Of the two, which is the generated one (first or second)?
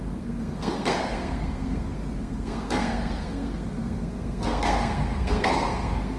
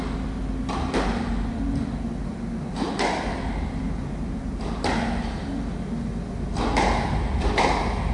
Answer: first